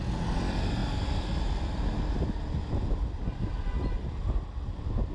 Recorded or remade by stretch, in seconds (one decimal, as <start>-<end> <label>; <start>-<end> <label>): 0.0-5.1 recorded